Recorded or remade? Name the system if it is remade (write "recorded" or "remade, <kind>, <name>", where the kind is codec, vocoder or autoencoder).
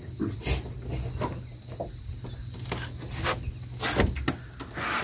recorded